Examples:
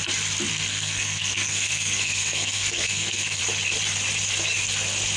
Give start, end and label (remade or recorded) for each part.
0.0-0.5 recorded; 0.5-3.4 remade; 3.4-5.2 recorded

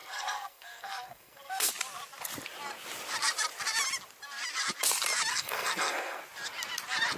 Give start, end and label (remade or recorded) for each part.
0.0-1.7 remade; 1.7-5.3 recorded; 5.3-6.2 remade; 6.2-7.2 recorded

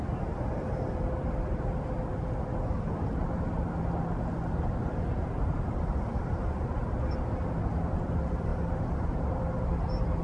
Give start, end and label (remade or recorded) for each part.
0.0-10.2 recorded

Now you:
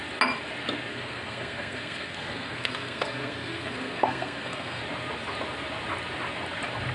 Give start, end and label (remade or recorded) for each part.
0.0-0.9 recorded; 0.9-4.8 remade; 4.8-6.9 recorded